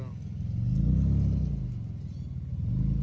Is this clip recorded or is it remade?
recorded